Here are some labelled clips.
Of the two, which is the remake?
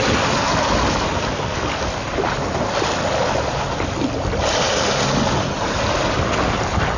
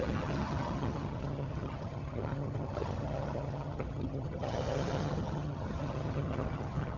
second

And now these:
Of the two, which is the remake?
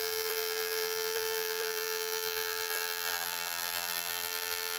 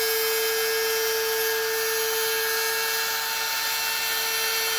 first